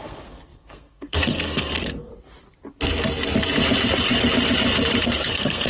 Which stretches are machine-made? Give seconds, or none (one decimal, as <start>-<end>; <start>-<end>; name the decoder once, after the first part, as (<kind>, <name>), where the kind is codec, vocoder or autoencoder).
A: 0.0-2.1 (codec, SNAC); 5.0-5.7